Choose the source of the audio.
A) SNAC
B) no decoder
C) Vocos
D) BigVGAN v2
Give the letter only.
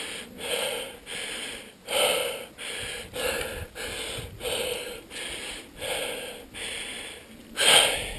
B